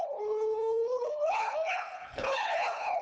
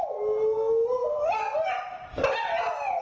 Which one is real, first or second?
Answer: second